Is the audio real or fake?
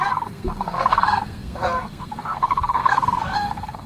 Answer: fake